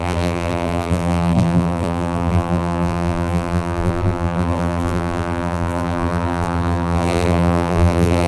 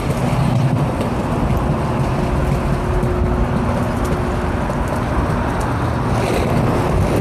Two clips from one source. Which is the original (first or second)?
second